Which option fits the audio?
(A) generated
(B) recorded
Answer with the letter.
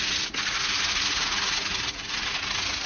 A